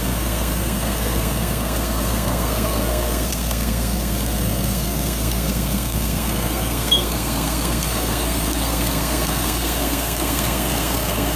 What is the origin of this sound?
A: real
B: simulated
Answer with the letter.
B